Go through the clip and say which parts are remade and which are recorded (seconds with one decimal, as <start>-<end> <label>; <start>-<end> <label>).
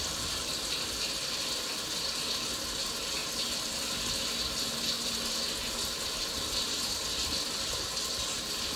0.0-8.8 recorded